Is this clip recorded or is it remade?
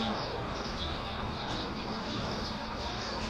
remade